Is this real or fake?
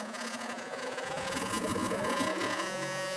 fake